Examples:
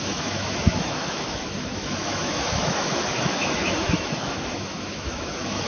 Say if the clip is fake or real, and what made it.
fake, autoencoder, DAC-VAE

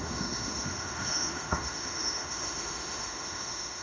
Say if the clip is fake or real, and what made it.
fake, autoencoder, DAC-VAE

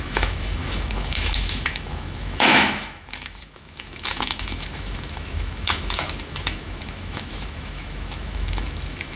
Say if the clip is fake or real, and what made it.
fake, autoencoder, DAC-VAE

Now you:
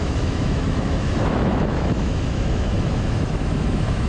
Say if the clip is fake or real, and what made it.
fake, autoencoder, DAC-VAE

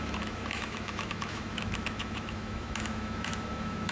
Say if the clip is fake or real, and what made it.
fake, autoencoder, DAC-VAE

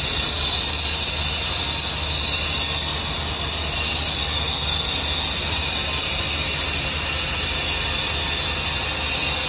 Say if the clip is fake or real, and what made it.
real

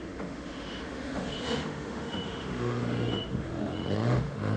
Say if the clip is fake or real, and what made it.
fake, autoencoder, DAC-VAE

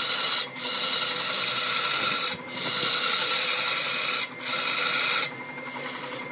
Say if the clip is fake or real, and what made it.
real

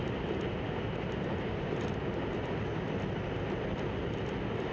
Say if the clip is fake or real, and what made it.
real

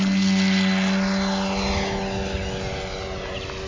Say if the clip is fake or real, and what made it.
real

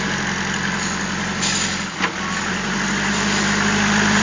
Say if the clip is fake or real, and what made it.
real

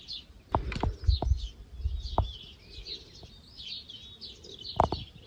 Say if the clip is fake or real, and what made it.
real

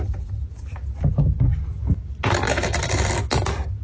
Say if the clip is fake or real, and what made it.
real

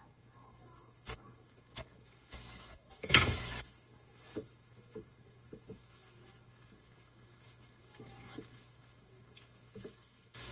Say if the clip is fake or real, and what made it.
fake, autoencoder, DAC-VAE